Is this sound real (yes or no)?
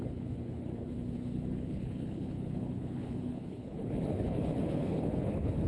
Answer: no